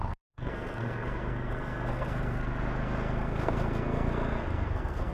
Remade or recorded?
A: remade